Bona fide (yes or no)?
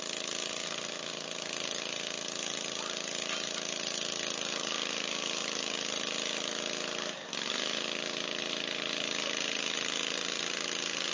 yes